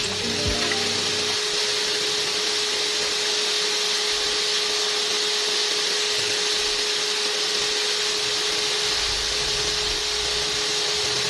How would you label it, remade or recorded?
recorded